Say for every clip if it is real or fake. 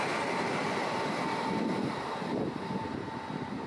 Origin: real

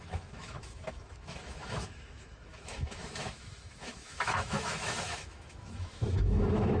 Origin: fake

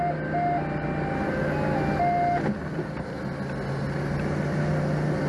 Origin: real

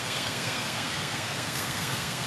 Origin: fake